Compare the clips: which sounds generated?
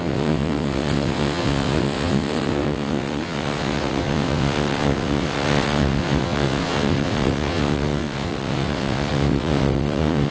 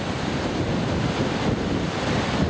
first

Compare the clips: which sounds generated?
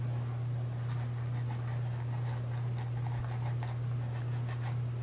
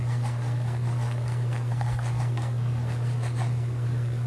second